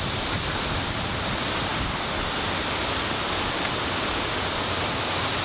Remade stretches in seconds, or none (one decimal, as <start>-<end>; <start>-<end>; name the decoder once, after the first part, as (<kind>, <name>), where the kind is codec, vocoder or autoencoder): none